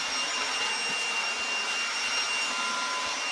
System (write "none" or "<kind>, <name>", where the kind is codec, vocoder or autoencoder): none